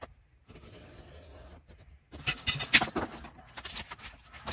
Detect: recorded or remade recorded